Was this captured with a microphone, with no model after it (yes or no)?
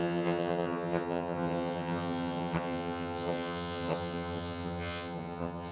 no